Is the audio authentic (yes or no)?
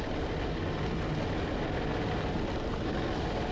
yes